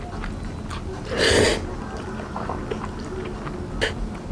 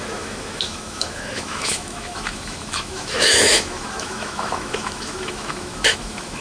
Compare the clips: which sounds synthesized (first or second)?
second